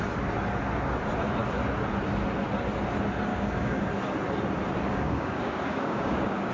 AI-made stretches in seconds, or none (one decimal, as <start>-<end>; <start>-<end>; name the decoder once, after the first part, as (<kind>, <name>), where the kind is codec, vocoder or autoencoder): 3.3-3.9 (codec, DAC); 4.9-6.5